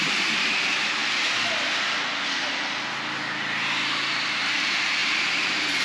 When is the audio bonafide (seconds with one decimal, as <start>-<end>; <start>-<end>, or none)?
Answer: 1.0-4.5